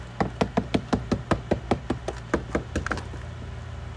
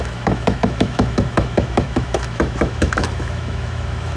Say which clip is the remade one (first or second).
second